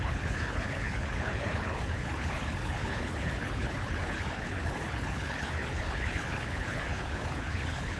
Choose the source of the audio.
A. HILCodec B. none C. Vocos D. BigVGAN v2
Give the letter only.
A